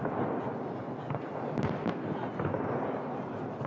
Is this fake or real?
real